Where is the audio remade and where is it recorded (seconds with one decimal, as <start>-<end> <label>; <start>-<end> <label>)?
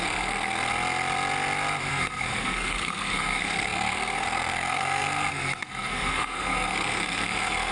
0.0-0.7 remade; 0.7-1.9 recorded; 1.9-7.7 remade